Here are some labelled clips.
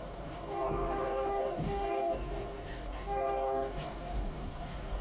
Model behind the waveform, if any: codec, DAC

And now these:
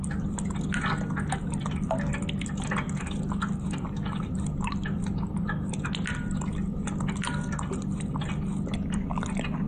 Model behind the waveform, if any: none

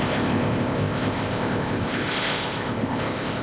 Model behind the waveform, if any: codec, ZipCodec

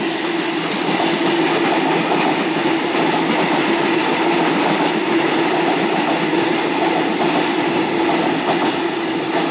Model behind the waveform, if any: none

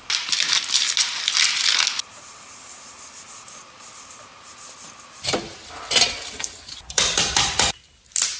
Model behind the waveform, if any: none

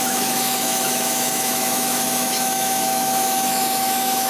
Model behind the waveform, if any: autoencoder, DAC-VAE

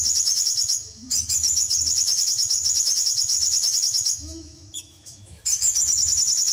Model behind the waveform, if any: autoencoder, DAC-VAE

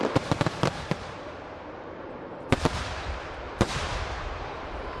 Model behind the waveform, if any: vocoder, BigVGAN v2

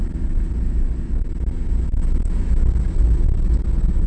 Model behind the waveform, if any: none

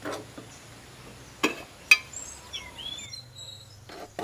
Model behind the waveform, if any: none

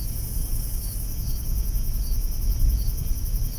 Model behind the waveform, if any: autoencoder, DAC-VAE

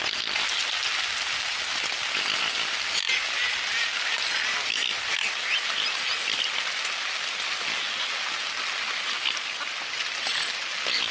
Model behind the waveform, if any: none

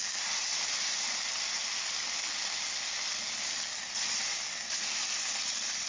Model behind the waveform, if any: none